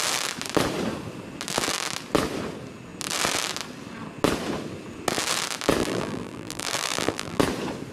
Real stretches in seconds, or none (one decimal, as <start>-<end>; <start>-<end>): 0.0-5.8; 7.4-7.9